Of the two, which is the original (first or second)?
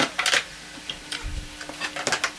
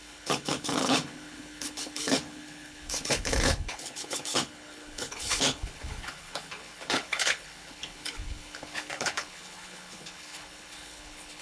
first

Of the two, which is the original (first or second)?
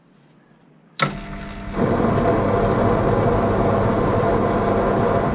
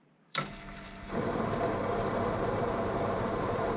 first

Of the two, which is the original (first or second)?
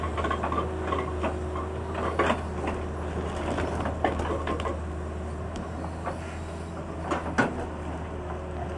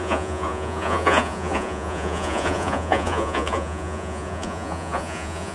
first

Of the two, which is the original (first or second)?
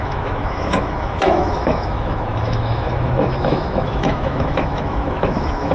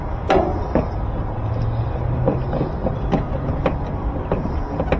second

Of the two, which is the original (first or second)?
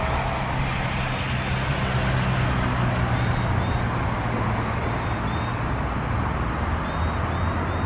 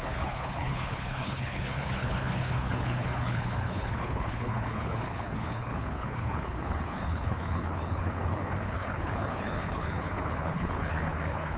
first